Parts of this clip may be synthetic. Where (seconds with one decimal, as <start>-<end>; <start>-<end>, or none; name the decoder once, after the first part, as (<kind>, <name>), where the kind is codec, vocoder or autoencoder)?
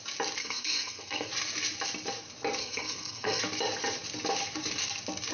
0.4-1.3 (codec, SNAC); 2.6-3.4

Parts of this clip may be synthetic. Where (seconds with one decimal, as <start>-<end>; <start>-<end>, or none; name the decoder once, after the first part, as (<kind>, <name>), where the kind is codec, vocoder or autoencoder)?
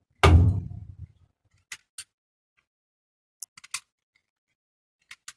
none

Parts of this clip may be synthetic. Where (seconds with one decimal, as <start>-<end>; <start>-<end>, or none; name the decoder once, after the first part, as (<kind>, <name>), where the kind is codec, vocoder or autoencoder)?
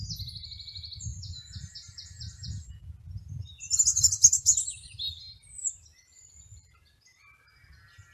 1.1-2.7 (vocoder, BigVGAN v2); 3.9-4.4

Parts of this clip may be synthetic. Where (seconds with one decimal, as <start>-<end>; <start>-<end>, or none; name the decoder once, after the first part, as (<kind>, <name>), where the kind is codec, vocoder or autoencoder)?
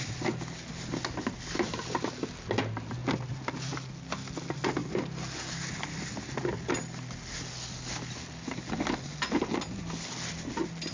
none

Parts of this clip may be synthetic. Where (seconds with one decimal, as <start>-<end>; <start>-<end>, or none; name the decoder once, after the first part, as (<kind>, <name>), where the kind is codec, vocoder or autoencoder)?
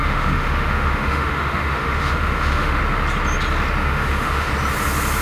0.0-2.8 (autoencoder, DAC-VAE); 3.8-4.5